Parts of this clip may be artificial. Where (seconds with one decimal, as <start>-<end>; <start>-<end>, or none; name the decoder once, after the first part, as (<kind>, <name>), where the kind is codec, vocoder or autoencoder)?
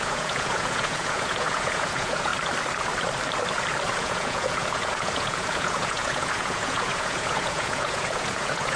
0.0-2.3 (vocoder, Vocos); 4.0-8.8